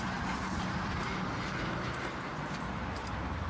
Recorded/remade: recorded